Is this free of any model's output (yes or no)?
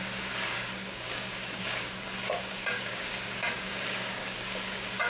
no